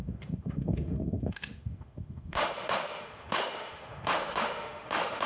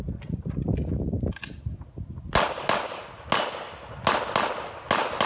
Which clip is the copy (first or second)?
first